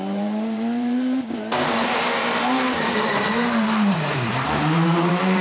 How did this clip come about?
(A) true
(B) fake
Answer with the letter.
B